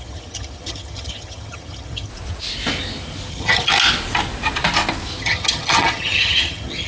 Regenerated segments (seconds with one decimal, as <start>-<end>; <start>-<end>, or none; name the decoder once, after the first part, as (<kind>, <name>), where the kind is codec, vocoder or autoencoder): 0.0-2.1 (vocoder, HiFi-GAN); 3.3-3.7; 5.2-6.9